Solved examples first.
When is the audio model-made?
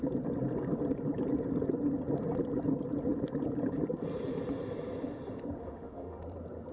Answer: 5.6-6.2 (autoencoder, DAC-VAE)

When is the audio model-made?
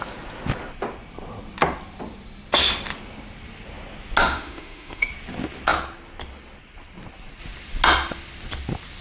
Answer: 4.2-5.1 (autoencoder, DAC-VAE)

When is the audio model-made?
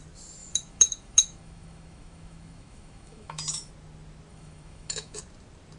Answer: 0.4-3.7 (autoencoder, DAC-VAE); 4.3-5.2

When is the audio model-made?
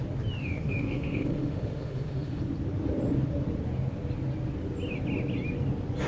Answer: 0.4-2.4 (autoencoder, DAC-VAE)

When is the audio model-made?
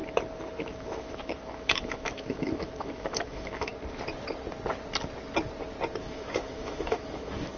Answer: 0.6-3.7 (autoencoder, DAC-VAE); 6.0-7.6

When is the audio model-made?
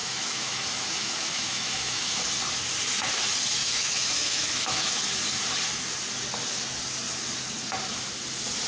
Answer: 0.0-2.3 (autoencoder, DAC-VAE); 3.6-5.0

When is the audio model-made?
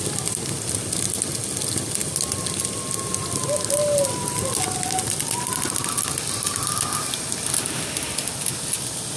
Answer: none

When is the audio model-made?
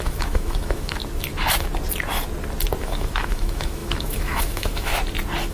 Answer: 0.0-1.0 (autoencoder, DAC-VAE); 2.8-4.9